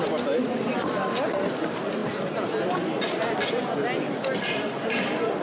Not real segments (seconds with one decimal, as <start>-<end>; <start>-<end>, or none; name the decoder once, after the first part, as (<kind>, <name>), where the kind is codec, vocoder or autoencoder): none